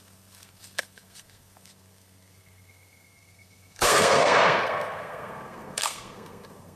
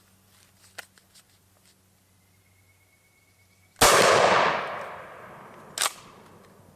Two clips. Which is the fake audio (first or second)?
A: first